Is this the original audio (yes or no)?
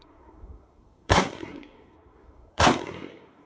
no